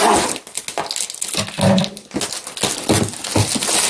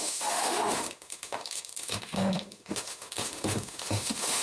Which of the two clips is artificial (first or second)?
second